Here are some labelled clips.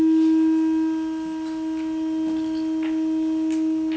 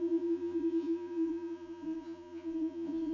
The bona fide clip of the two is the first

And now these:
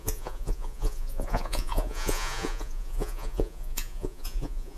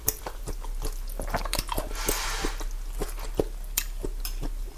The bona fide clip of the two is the second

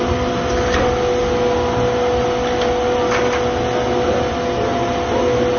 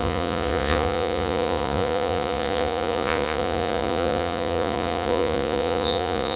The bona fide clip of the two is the first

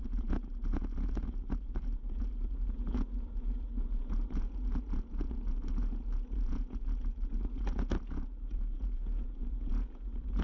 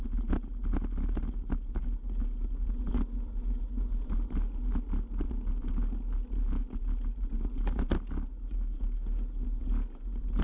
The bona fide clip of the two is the second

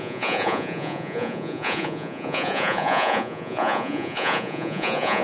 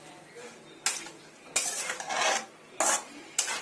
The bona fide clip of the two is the second